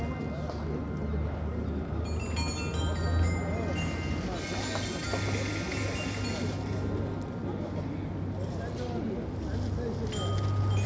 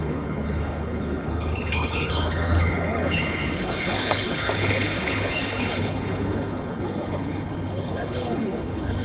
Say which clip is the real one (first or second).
first